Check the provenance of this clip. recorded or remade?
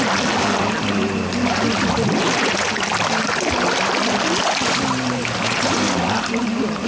recorded